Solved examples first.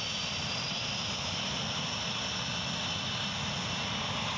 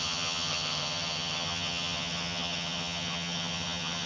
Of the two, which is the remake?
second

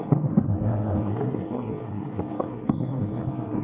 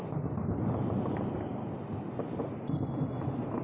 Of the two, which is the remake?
first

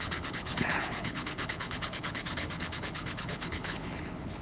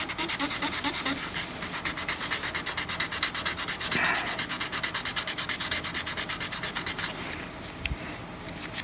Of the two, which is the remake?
first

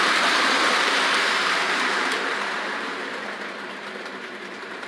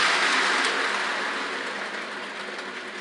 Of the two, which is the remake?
first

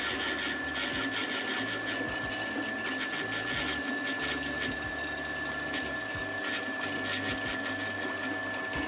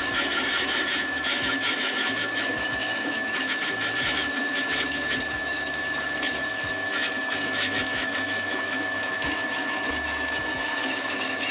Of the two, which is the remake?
second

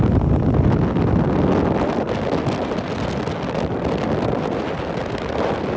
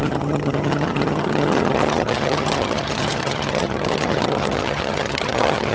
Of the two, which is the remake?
second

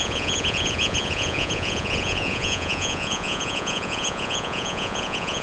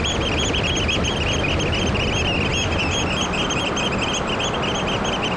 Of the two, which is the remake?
first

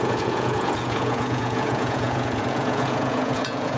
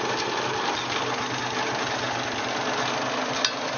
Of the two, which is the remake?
first